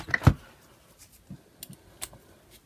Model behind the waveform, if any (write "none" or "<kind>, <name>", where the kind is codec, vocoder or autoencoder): none